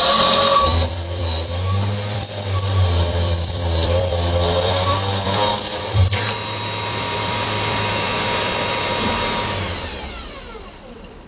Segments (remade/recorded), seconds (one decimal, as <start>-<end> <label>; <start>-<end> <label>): 0.0-11.3 remade

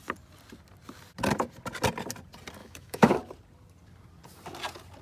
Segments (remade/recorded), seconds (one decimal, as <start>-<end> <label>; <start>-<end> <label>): 0.0-2.6 recorded; 2.6-3.2 remade; 3.2-5.0 recorded

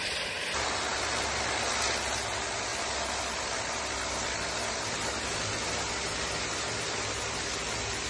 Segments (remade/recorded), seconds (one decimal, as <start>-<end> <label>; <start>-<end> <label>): 0.0-8.1 recorded

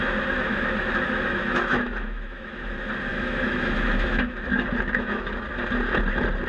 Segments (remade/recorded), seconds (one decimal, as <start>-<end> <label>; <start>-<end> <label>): 0.0-2.7 remade; 2.7-3.1 recorded; 3.1-5.3 remade; 5.3-6.5 recorded

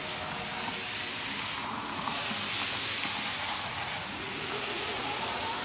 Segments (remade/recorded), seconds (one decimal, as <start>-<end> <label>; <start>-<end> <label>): 0.0-1.6 recorded; 1.6-2.2 remade; 2.2-3.3 recorded; 3.3-5.6 remade

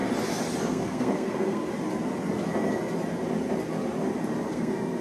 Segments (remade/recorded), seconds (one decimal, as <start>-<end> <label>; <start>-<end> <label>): 0.0-0.6 recorded; 0.6-1.6 remade; 1.6-4.5 recorded; 4.5-5.0 remade